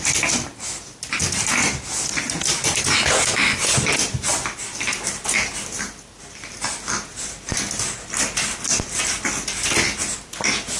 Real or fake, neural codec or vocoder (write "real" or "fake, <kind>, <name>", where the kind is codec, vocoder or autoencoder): real